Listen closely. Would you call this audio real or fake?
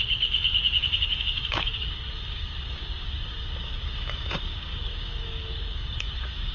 fake